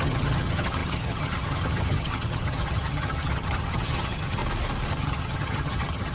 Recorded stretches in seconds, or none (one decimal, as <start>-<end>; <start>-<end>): 4.4-4.9